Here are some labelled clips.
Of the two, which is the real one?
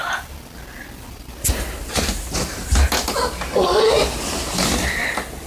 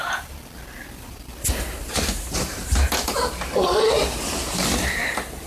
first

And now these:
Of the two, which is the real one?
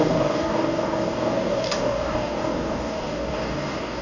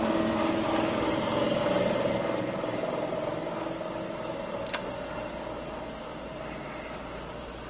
second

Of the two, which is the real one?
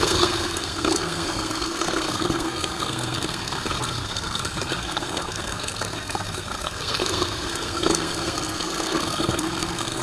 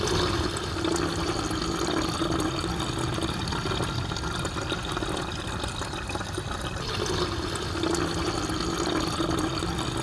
second